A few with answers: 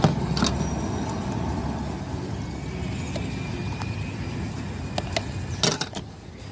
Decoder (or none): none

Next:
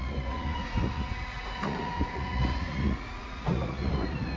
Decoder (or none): vocoder, Vocos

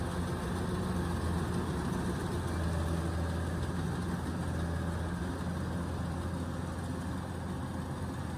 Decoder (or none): none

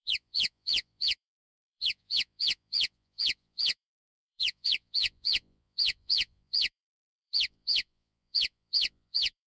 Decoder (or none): vocoder, Vocos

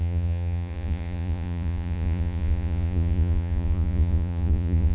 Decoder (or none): vocoder, Vocos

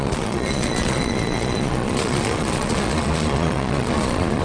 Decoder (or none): vocoder, Vocos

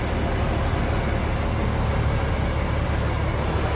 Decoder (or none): none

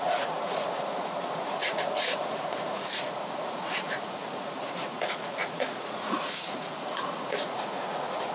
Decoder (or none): vocoder, Vocos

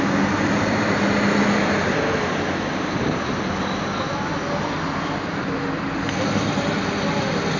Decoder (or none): none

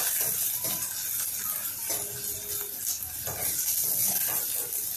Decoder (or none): none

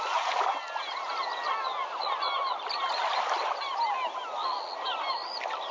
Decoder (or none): none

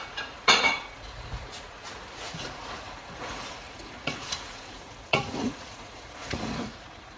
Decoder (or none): vocoder, Vocos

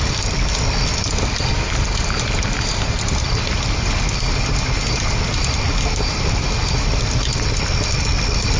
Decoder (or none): none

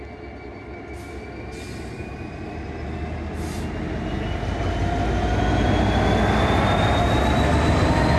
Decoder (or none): none